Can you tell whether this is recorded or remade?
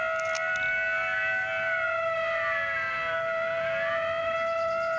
recorded